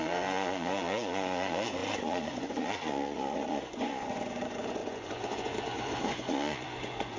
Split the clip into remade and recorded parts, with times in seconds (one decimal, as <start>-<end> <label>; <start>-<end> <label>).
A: 0.0-7.2 remade